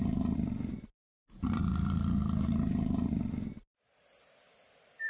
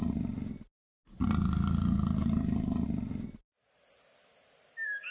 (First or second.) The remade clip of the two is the first